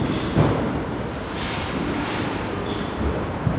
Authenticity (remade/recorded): recorded